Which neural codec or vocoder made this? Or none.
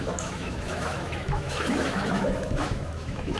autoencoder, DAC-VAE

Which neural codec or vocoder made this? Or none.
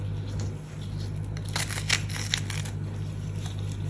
none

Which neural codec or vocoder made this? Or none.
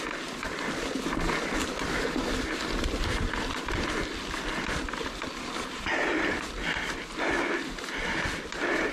none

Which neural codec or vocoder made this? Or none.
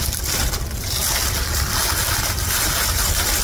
vocoder, BigVGAN v2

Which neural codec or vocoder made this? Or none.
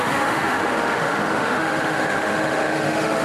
autoencoder, DAC-VAE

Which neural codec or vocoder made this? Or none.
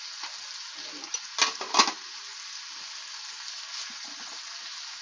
none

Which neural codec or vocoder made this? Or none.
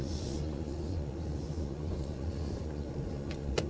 vocoder, Vocos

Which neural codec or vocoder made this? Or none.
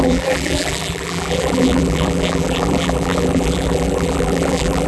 vocoder, BigVGAN v2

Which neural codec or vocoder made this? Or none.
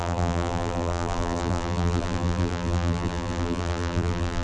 vocoder, BigVGAN v2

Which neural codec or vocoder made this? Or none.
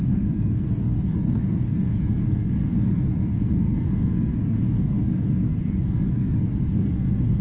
codec, SNAC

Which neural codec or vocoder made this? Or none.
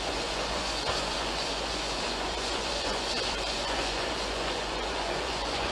vocoder, Vocos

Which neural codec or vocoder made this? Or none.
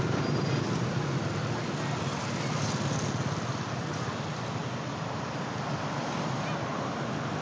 none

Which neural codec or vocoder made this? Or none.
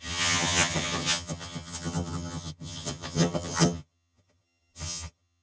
vocoder, HiFi-GAN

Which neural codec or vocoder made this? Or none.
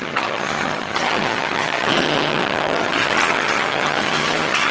vocoder, HiFi-GAN